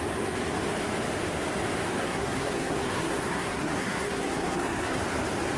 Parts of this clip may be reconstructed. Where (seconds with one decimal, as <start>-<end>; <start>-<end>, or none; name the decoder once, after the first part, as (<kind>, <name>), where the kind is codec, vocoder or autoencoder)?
2.0-5.0 (codec, SNAC)